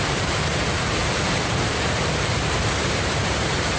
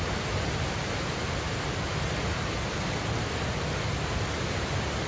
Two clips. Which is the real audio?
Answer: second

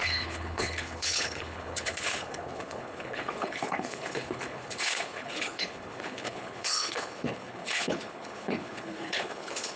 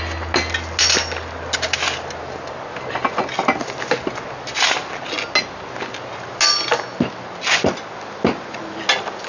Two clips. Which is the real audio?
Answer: second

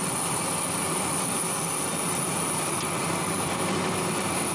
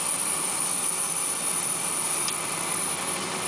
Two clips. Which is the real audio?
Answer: second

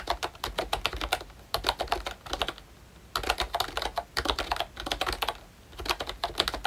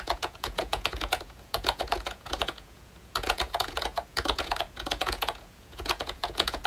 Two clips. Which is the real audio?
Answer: first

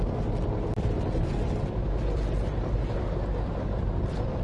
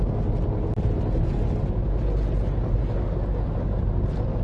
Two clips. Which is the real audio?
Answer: second